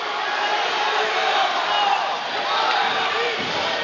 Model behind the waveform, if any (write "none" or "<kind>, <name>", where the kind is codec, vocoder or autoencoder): vocoder, BigVGAN v2